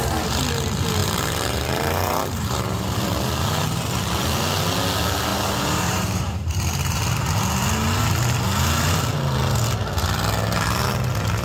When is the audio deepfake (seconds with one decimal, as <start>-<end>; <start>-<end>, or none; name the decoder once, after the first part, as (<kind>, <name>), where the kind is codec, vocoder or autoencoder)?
1.0-3.0 (vocoder, BigVGAN v2); 5.3-7.0